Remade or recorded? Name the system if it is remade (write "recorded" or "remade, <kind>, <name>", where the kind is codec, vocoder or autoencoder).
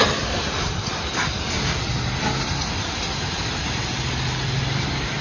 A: recorded